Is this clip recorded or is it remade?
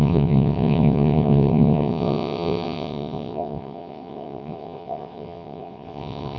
remade